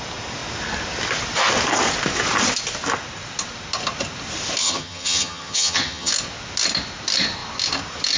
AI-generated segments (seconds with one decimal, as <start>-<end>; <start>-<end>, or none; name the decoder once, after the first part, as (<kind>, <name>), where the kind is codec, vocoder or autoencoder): 4.6-6.1 (vocoder, HiFi-GAN)